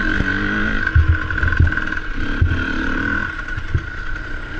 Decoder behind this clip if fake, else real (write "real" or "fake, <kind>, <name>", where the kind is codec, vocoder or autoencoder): real